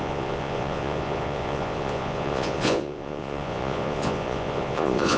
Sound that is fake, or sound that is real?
fake